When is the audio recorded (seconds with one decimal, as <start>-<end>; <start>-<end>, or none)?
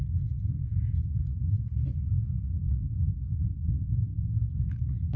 4.0-4.5